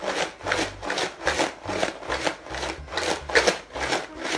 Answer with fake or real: real